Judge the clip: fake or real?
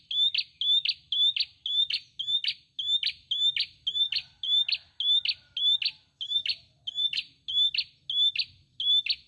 real